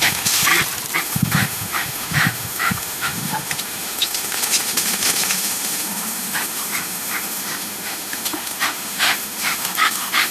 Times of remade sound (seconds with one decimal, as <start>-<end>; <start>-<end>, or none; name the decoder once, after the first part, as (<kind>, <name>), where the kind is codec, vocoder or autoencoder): 0.0-0.5 (autoencoder, DAC-VAE); 1.0-10.3